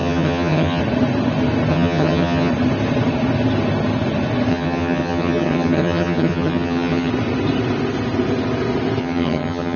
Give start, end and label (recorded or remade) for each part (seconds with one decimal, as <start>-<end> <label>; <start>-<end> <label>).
0.0-0.8 remade; 0.8-1.7 recorded; 1.7-2.5 remade; 2.5-4.5 recorded; 4.5-7.1 remade; 7.1-9.0 recorded; 9.0-9.8 remade